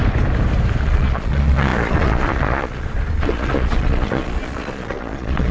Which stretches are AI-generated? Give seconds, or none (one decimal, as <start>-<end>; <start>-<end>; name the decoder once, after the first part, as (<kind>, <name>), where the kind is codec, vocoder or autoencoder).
0.8-5.5 (vocoder, Vocos)